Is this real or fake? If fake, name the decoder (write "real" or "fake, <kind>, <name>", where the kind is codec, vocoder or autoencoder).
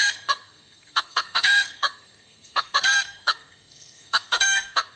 fake, codec, SNAC